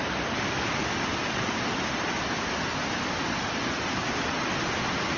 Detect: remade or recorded recorded